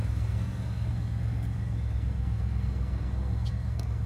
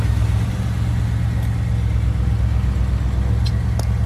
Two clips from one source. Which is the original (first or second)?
second